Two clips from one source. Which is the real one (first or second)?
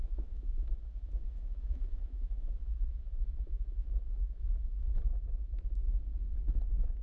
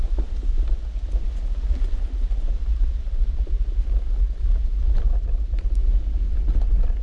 second